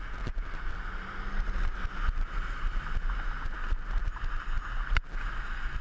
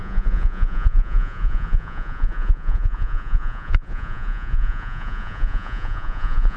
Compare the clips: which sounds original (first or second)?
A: first